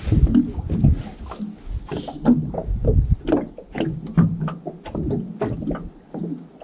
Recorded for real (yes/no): yes